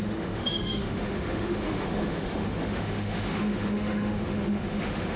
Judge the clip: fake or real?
fake